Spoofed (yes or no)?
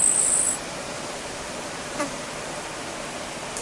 yes